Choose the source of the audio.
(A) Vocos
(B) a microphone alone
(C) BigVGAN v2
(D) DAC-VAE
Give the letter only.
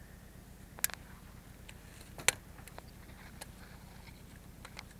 B